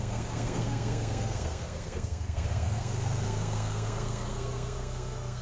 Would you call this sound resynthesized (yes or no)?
yes